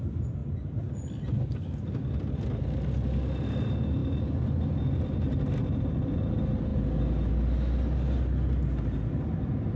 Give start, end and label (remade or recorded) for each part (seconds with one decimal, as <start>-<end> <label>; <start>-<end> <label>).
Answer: 0.0-9.8 recorded

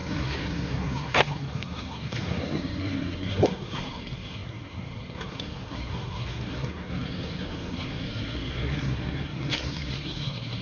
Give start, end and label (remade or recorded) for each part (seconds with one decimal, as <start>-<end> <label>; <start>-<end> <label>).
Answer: 0.0-10.6 remade

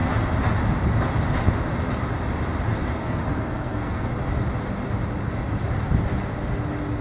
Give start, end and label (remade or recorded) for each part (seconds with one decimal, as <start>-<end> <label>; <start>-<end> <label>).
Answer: 0.0-3.0 recorded; 3.0-4.1 remade; 4.1-7.0 recorded